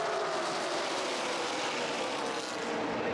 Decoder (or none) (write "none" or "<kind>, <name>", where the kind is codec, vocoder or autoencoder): none